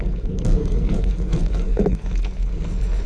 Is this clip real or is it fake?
fake